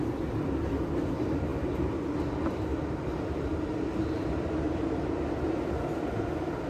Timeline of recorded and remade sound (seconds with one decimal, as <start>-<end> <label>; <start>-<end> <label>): 0.0-6.7 recorded

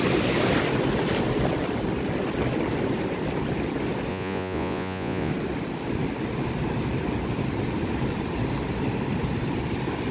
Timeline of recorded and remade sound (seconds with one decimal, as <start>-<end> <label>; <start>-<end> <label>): 0.0-4.1 recorded; 4.1-5.3 remade; 5.3-10.1 recorded

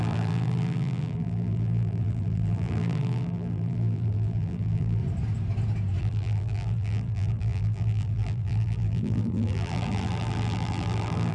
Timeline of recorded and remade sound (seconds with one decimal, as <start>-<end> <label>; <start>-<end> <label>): 0.0-5.0 remade; 5.0-6.0 recorded; 6.0-11.3 remade

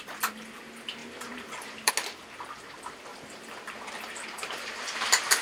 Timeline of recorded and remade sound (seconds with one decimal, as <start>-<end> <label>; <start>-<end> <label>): 0.0-1.0 recorded; 1.0-1.9 remade; 1.9-3.1 recorded; 3.1-5.4 remade

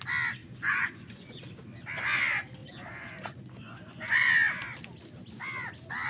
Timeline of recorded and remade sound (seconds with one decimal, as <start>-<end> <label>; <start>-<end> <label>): 0.0-0.4 recorded; 0.4-1.4 remade; 1.4-2.6 recorded; 2.6-4.3 remade; 4.3-6.1 recorded

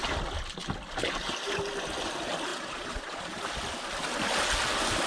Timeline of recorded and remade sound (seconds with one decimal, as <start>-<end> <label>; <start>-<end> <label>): 0.0-2.5 recorded; 2.5-3.4 remade; 3.4-5.1 recorded

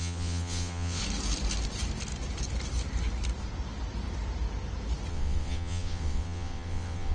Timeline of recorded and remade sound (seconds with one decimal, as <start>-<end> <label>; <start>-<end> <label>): 0.0-1.0 remade; 1.0-5.1 recorded; 5.1-7.1 remade